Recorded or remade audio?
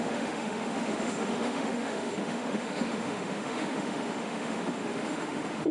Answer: remade